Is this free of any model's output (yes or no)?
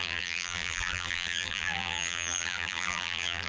no